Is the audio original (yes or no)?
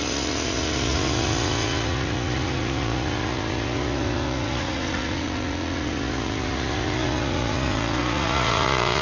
no